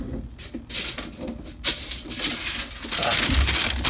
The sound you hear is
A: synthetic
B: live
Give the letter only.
B